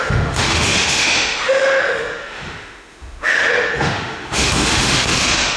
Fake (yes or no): yes